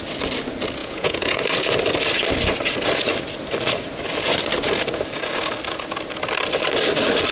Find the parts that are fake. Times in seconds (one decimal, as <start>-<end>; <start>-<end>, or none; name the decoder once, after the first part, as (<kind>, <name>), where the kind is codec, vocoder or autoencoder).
0.8-1.4 (vocoder, Vocos)